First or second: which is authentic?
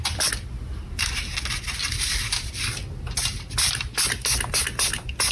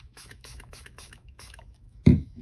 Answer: first